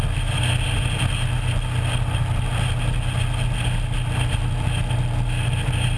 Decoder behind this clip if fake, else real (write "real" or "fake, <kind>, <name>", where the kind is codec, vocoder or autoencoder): real